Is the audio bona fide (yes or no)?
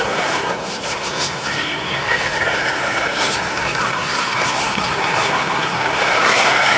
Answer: no